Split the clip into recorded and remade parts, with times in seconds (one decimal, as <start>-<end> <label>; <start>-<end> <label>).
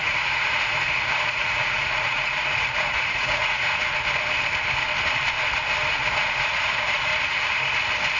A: 0.0-3.8 remade; 3.8-5.9 recorded; 5.9-7.1 remade; 7.1-8.2 recorded